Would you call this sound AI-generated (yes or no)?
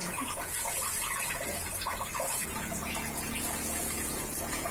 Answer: yes